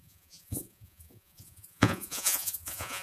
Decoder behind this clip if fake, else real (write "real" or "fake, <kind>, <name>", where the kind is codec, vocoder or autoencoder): fake, vocoder, Vocos